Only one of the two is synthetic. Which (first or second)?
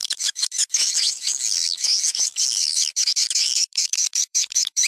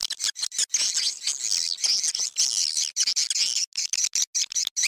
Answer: first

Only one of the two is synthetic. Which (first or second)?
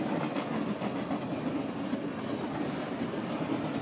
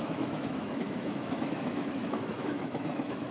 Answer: second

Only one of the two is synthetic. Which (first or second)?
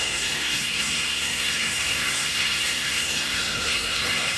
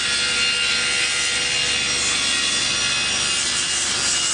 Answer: first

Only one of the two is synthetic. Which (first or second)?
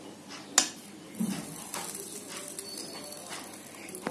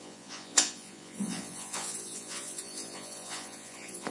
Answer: second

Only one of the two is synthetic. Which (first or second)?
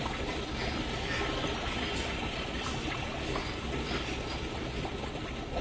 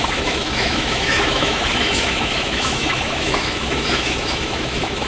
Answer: second